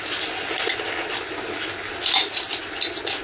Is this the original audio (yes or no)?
yes